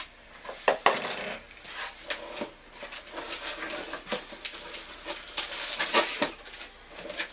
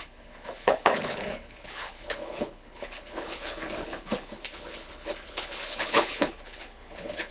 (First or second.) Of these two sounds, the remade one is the second